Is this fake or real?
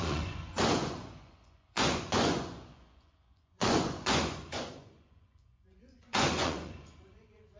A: fake